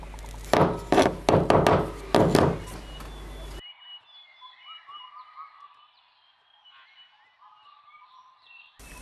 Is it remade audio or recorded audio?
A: recorded